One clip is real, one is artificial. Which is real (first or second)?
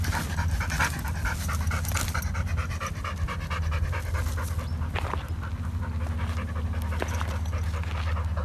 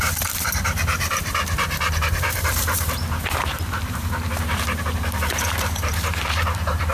first